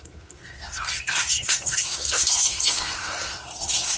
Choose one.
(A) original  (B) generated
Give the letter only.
B